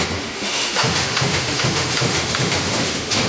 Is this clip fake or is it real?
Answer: fake